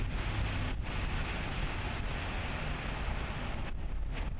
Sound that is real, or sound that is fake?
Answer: real